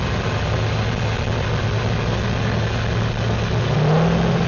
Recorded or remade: recorded